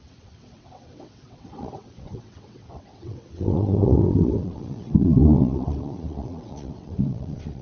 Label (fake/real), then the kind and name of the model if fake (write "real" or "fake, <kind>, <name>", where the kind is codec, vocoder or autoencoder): fake, vocoder, WaveNeXt